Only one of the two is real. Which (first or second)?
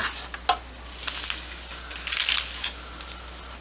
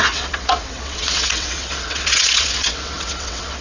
first